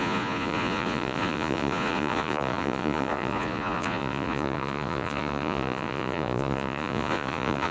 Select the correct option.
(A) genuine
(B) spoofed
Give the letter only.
B